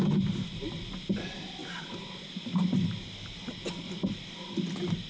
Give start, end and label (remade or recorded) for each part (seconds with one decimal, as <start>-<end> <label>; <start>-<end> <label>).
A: 0.0-1.6 remade; 1.6-5.1 recorded